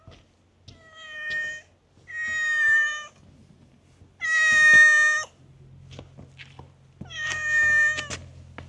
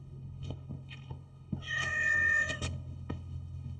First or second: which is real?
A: first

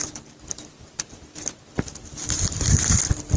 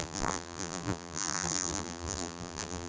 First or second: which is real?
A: first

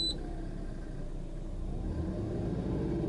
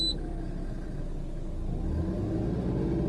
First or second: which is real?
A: second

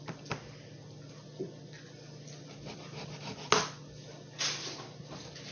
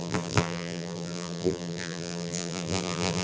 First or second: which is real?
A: first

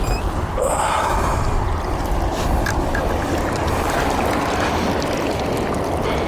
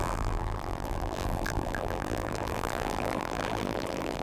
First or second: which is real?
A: first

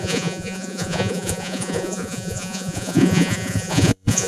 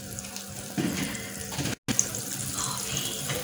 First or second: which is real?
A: second